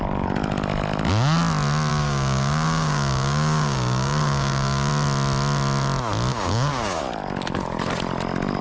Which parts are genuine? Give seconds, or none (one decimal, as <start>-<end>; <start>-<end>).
0.0-1.9; 4.9-6.3; 7.0-8.6